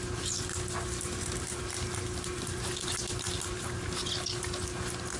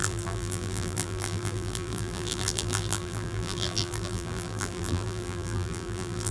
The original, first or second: first